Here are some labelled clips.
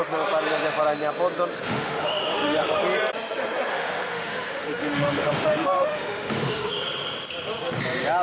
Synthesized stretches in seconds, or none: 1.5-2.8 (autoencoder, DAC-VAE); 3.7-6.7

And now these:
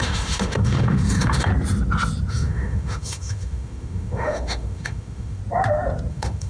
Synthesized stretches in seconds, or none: 0.0-1.5 (autoencoder, DAC-VAE); 2.3-5.4; 6.1-6.5

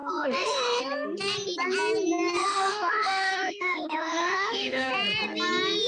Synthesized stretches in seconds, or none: 0.0-0.8 (autoencoder, DAC-VAE); 2.4-4.9

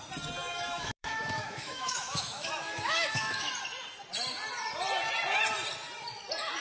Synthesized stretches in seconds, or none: 0.4-3.5 (autoencoder, DAC-VAE)

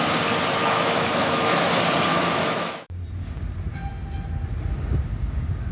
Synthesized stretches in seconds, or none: 0.6-1.6 (autoencoder, DAC-VAE); 2.1-2.9

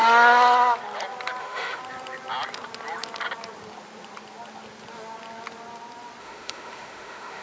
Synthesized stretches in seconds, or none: 1.4-1.8 (autoencoder, DAC-VAE); 6.2-7.4

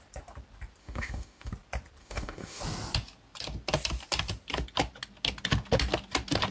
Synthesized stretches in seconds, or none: 0.8-1.5 (autoencoder, DAC-VAE); 2.0-2.6